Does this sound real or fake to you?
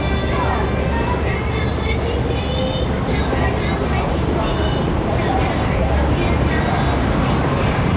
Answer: real